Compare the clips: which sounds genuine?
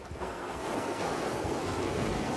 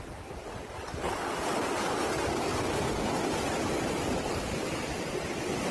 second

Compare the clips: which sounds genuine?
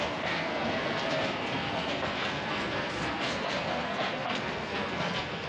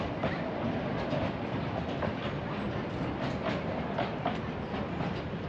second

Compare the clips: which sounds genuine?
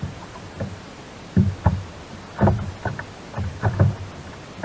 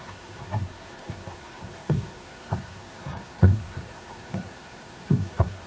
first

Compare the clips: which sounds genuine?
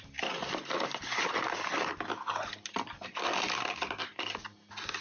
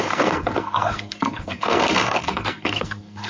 first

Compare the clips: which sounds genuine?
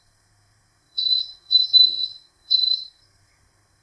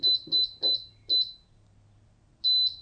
second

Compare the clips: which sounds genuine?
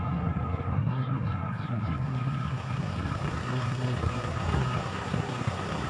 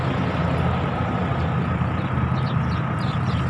second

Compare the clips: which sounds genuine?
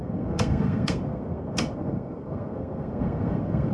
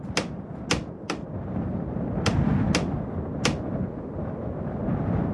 second